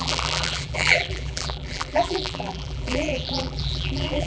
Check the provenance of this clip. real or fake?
fake